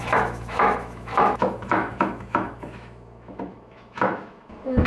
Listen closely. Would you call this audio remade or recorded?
remade